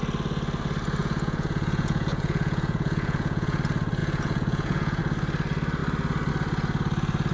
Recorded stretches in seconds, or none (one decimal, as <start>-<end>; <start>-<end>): 0.0-1.0; 3.6-4.0; 5.0-7.3